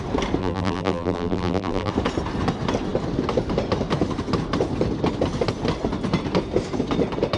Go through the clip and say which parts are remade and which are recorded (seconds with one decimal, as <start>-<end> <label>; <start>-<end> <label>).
0.0-0.4 recorded; 0.4-1.9 remade; 1.9-7.4 recorded